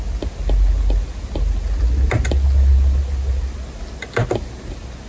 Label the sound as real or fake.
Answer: real